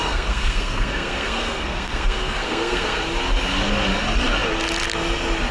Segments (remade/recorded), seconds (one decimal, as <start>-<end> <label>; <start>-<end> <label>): 0.0-3.0 remade; 3.0-5.5 recorded